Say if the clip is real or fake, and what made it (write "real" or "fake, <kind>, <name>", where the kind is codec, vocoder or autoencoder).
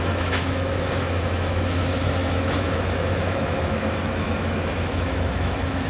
fake, autoencoder, DAC-VAE